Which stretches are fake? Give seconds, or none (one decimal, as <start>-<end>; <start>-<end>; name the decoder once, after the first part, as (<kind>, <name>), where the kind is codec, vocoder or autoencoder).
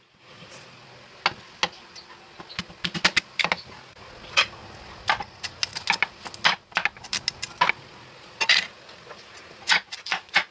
0.0-0.8 (vocoder, Vocos); 3.7-4.6; 7.7-10.5